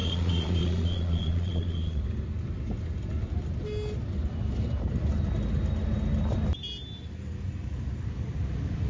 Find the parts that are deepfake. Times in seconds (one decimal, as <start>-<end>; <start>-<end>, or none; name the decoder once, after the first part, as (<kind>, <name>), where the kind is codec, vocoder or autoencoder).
0.0-2.0 (vocoder, Vocos)